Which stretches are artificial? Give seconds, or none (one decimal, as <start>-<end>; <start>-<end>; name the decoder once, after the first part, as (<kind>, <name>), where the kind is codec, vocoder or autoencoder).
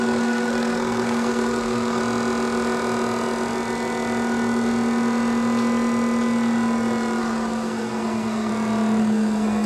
0.0-2.0 (codec, SNAC); 7.2-8.5; 9.0-9.7